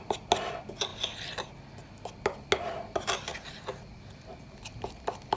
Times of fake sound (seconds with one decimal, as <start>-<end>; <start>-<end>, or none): none